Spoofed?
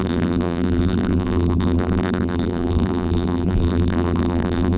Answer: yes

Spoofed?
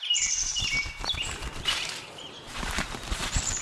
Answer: yes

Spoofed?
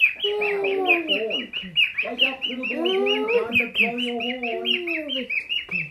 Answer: no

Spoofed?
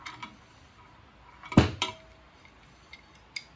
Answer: no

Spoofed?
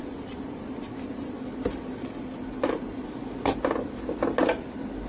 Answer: no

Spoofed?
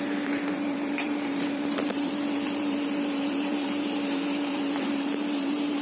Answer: yes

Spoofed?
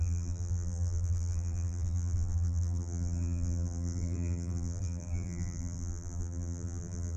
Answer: yes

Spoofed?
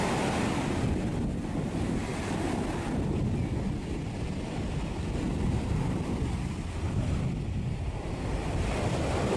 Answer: no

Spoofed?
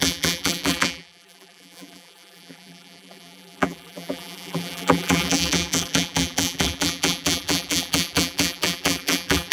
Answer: yes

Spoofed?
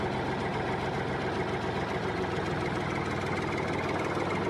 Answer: no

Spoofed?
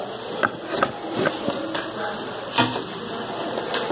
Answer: no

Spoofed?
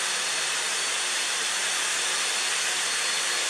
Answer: no